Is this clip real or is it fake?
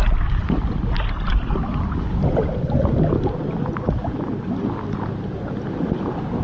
real